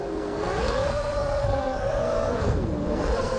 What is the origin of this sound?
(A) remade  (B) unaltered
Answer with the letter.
A